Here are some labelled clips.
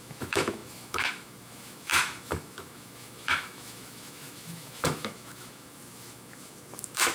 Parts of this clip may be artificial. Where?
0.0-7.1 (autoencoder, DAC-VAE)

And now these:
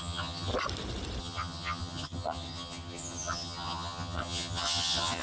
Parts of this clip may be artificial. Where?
0.0-0.5 (vocoder, HiFi-GAN); 1.2-5.2

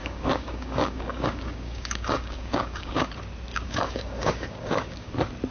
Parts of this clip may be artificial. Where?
0.0-3.1 (codec, DAC); 3.5-5.1

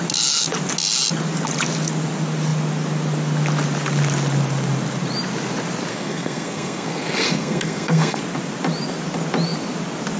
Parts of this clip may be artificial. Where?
5.9-8.2 (codec, SNAC)